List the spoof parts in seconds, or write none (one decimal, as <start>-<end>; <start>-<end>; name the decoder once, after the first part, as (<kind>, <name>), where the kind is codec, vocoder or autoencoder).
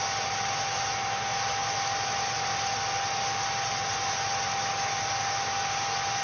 none